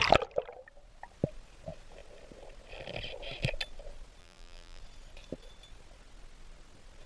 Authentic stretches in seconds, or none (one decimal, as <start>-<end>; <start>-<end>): 0.0-4.2; 4.8-7.1